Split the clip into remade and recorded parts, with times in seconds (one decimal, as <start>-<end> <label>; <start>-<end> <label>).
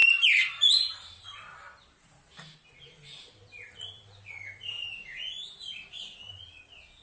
0.0-7.0 recorded